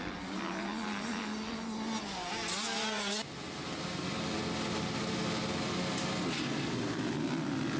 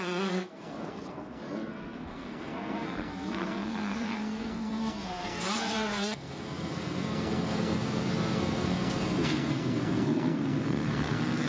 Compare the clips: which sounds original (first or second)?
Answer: first